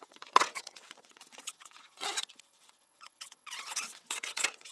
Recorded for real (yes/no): no